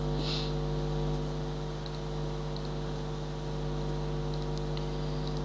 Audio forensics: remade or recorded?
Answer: recorded